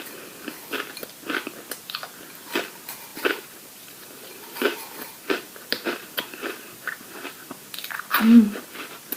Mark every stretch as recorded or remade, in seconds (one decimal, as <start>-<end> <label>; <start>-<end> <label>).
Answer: 0.0-3.1 recorded; 3.1-7.5 remade; 7.5-9.2 recorded